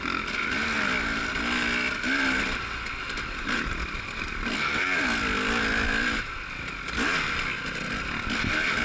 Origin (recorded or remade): recorded